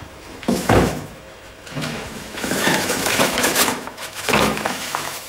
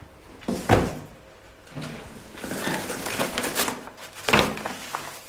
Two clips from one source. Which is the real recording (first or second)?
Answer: second